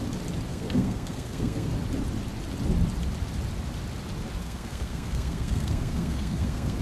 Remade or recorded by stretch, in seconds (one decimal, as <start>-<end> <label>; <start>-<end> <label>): 0.0-0.5 recorded; 0.5-1.7 remade; 1.7-4.4 recorded; 4.4-6.8 remade